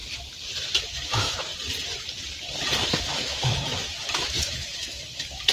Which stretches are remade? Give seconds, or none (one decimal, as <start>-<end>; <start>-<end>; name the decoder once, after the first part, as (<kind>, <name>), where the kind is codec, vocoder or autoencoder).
0.8-1.5 (autoencoder, DAC-VAE); 3.0-5.5